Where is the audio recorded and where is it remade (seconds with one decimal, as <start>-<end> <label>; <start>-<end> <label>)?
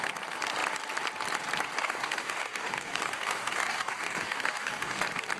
0.0-1.8 recorded; 1.8-5.0 remade; 5.0-5.4 recorded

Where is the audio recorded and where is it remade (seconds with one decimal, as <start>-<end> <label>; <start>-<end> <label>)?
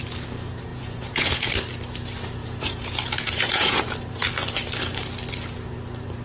0.0-0.7 recorded; 0.7-1.4 remade; 1.4-2.4 recorded; 2.4-3.8 remade; 3.8-6.2 recorded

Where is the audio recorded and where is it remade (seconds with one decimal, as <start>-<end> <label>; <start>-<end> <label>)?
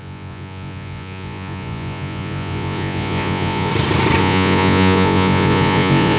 0.0-3.7 remade; 3.7-4.2 recorded; 4.2-6.2 remade